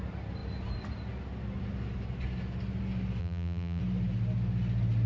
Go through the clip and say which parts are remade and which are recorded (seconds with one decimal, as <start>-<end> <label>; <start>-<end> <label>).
0.0-3.2 recorded; 3.2-3.8 remade; 3.8-5.1 recorded